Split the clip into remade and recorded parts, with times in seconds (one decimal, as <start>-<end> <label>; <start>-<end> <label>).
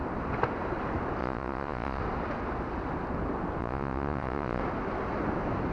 0.0-1.2 recorded; 1.2-2.0 remade; 2.0-3.6 recorded; 3.6-4.6 remade; 4.6-5.7 recorded